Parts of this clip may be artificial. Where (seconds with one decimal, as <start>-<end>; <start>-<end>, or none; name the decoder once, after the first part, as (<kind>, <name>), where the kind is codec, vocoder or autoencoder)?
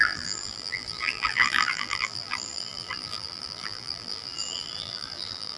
0.0-5.6 (vocoder, BigVGAN v2)